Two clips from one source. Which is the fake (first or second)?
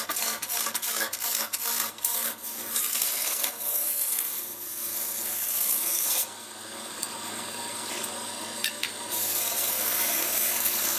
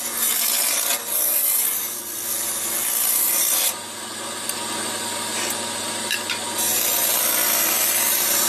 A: first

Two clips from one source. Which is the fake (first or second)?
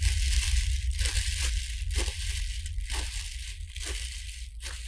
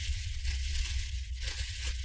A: second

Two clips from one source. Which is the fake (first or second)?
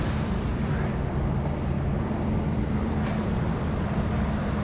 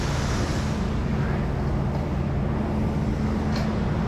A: first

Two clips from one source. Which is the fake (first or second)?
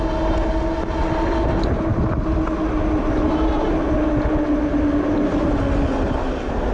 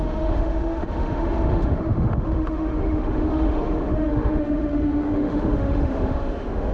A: second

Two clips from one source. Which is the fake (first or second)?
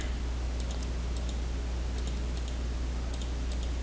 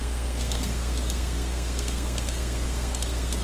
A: second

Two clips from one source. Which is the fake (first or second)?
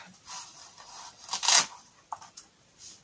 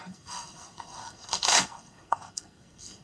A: second